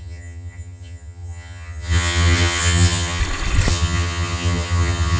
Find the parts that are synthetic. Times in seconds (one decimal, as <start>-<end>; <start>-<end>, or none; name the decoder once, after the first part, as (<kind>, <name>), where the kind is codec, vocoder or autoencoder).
0.0-3.2 (vocoder, HiFi-GAN); 3.7-5.2